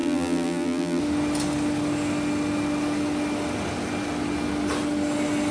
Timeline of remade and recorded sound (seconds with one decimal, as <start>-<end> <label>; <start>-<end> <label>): 0.0-1.0 remade; 1.0-5.5 recorded

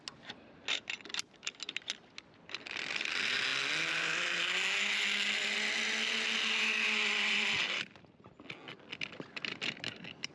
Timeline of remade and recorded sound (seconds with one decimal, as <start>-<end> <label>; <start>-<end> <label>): 0.0-10.3 recorded

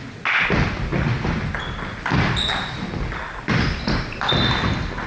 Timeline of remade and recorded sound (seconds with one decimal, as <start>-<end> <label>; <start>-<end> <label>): 0.0-0.9 recorded; 0.9-4.0 remade; 4.0-5.1 recorded

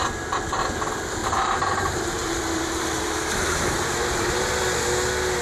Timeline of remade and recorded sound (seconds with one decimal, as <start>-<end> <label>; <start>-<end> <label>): 0.0-1.2 recorded; 1.2-4.4 remade; 4.4-5.4 recorded